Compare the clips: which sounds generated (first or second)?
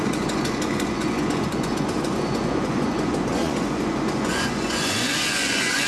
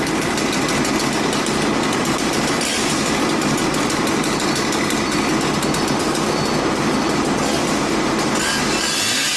first